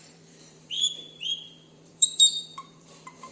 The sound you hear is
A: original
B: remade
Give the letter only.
B